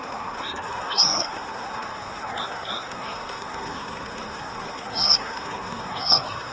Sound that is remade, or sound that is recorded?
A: remade